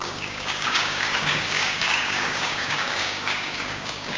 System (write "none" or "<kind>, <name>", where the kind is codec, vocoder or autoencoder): codec, DAC